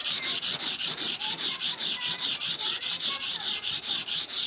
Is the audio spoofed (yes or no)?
yes